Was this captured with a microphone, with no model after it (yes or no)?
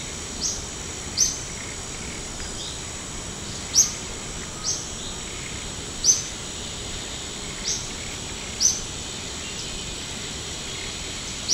yes